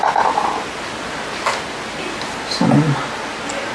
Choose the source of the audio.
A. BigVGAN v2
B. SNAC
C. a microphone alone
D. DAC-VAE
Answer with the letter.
C